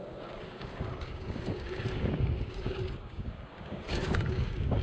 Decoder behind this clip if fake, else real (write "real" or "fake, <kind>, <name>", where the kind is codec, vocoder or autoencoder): fake, codec, DAC